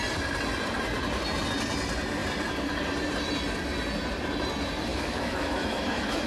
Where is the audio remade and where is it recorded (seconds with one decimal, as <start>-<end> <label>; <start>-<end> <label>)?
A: 0.0-4.9 recorded; 4.9-6.3 remade